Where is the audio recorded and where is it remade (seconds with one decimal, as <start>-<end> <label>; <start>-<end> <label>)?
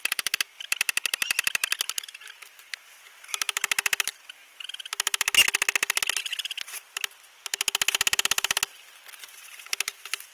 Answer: 0.0-10.3 recorded